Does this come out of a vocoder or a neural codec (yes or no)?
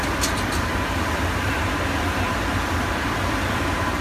no